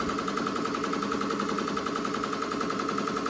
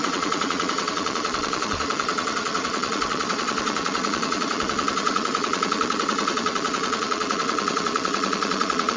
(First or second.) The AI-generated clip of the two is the second